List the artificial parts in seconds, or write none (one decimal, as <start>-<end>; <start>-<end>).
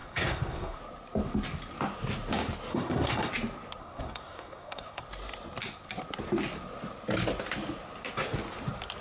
0.0-0.8; 2.7-3.3; 3.8-5.0